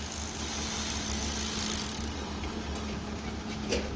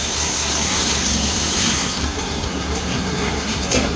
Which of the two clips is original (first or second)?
first